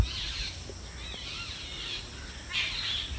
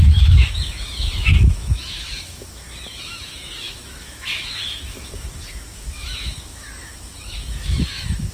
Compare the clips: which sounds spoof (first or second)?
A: second